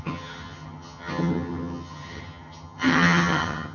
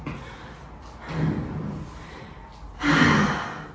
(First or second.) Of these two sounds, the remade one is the first